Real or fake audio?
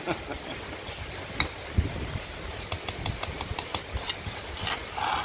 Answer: real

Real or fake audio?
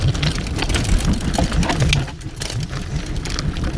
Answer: real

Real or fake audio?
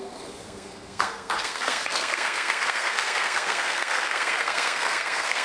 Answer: fake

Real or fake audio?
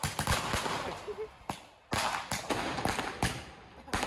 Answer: real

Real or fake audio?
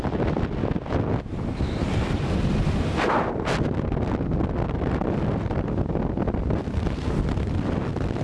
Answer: real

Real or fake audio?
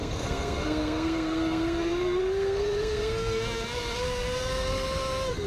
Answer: fake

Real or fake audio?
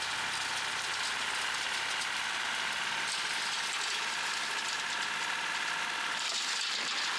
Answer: real